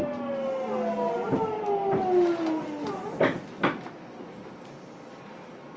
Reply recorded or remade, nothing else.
recorded